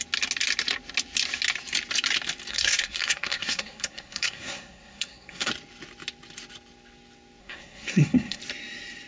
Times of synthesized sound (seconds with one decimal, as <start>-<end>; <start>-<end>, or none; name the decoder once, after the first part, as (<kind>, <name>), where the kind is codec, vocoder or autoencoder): 2.5-5.5 (codec, SNAC); 7.4-8.4